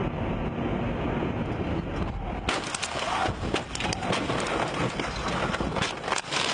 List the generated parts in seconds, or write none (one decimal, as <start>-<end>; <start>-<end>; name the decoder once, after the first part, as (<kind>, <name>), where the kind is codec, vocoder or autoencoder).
none